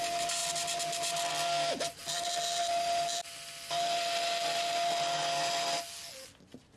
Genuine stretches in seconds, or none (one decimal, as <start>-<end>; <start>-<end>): 0.0-6.8